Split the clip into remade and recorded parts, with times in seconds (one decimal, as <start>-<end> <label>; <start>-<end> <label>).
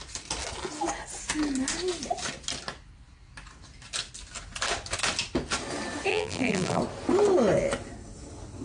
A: 0.0-6.1 recorded; 6.1-6.8 remade; 6.8-8.6 recorded